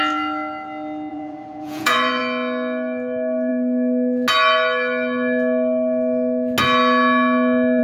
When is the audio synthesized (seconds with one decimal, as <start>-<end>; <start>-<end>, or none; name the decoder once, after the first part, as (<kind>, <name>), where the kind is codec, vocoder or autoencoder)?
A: 1.1-2.2 (vocoder, Vocos)